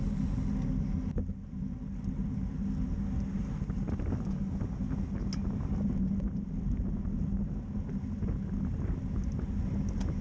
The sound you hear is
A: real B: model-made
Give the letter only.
A